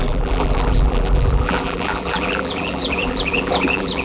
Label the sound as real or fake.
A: fake